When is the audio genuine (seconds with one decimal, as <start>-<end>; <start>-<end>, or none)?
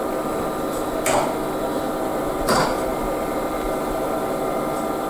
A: 0.0-5.1